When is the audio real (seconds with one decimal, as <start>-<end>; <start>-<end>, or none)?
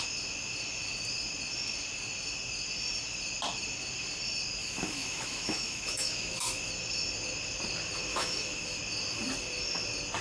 0.0-4.6; 6.7-8.1; 8.8-10.2